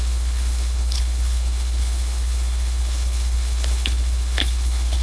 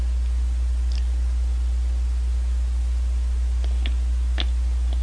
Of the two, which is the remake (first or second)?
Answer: first